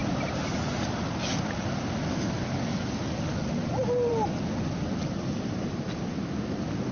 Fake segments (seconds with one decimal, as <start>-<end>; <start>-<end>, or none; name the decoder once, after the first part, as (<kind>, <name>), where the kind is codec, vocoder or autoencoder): none